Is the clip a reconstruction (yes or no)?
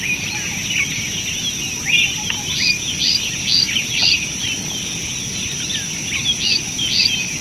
no